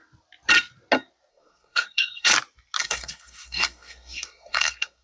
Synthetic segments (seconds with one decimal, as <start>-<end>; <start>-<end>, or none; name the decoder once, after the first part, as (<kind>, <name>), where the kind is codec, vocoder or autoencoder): 1.3-2.3 (codec, SNAC); 2.8-5.0